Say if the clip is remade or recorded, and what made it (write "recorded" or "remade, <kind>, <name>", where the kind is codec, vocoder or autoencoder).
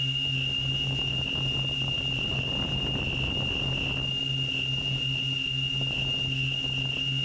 recorded